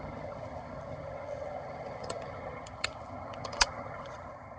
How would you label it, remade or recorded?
remade